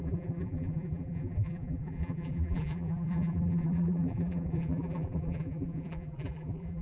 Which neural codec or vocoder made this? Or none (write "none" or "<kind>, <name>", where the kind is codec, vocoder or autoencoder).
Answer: vocoder, BigVGAN v2